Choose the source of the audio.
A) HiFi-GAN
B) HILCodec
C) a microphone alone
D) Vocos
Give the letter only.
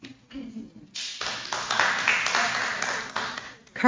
C